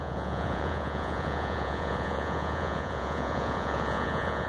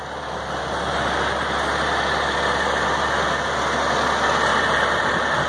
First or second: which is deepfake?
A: first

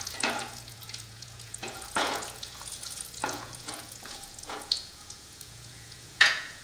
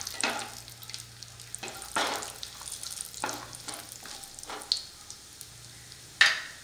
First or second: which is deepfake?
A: first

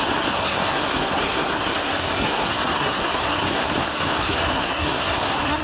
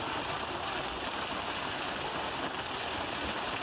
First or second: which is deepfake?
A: first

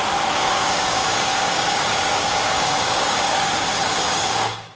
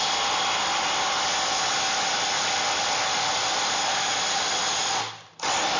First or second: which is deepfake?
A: first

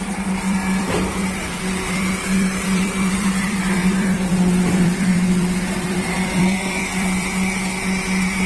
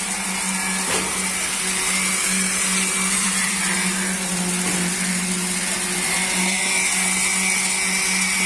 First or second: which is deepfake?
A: first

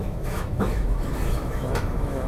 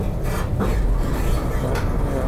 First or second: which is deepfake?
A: first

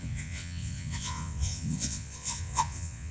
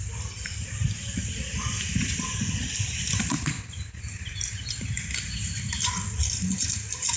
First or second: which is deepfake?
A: first